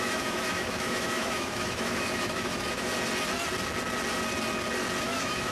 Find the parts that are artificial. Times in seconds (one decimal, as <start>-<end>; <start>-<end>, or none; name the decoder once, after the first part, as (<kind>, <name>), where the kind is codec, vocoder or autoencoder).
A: 0.0-2.9 (autoencoder, DAC-VAE); 5.0-5.5